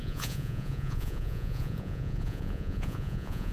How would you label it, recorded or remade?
remade